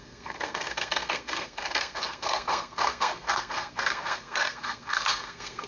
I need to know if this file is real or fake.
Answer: fake